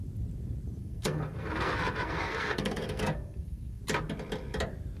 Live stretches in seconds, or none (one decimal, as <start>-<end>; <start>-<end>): 0.0-0.8; 3.8-5.0